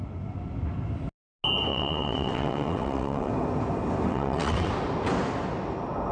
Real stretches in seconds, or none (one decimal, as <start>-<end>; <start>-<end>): 0.0-1.7; 3.3-4.1; 4.7-6.1